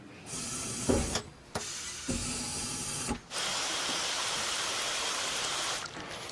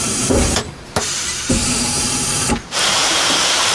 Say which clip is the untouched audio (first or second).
first